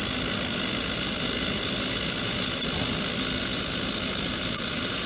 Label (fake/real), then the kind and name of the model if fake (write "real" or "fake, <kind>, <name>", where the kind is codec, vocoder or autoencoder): real